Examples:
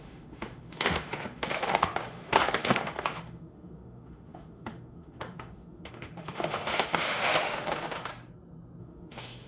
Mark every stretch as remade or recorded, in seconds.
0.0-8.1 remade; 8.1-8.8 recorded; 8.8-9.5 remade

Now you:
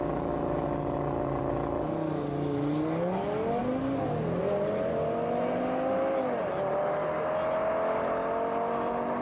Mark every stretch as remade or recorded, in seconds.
0.0-9.2 recorded